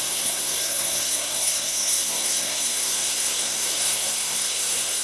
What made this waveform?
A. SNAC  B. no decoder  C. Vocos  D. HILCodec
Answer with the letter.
A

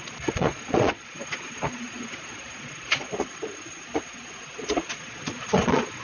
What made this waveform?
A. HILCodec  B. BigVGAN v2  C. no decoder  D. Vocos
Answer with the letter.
D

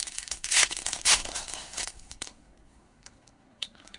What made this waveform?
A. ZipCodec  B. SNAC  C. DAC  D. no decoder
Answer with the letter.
B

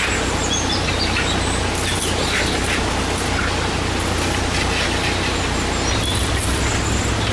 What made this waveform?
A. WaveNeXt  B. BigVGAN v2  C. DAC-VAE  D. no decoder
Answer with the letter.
D